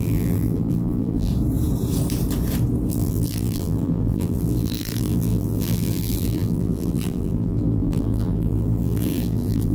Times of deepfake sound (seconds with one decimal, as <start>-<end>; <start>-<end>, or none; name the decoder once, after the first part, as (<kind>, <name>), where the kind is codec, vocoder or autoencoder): 0.0-1.3 (vocoder, BigVGAN v2); 2.9-9.7